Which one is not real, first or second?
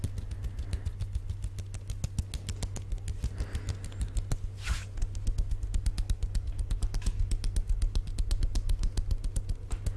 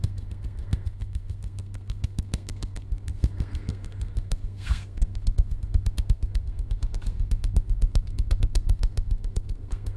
second